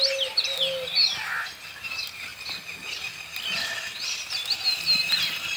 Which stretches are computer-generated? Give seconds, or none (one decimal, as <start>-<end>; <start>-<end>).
none

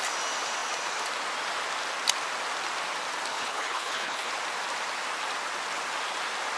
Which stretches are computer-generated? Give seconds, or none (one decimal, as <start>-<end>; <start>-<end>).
3.3-4.3

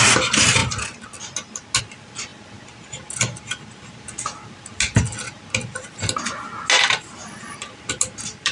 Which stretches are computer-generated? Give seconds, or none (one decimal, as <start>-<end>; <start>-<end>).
none

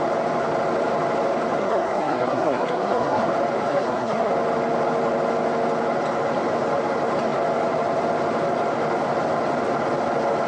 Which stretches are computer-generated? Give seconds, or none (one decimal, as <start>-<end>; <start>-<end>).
1.6-3.3; 3.7-4.3